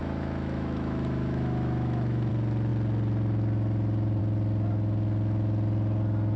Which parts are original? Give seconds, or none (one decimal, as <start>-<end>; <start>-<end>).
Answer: 2.3-6.4